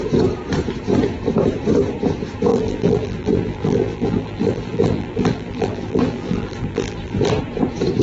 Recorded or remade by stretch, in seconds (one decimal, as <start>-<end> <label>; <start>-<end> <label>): 0.0-2.5 recorded; 2.5-7.3 remade; 7.3-8.0 recorded